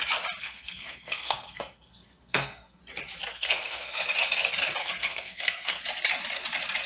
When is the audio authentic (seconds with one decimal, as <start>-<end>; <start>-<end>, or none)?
0.0-0.4; 2.8-3.3; 4.0-4.8; 5.8-6.9